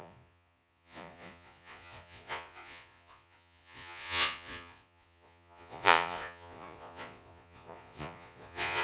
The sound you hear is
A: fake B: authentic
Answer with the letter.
A